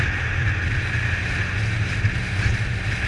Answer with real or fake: real